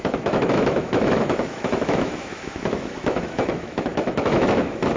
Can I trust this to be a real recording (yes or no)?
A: no